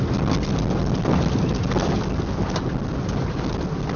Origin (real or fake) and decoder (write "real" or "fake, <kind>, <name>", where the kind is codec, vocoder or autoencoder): real